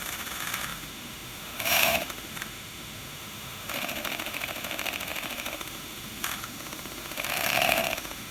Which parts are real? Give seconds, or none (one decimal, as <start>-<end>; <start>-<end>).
none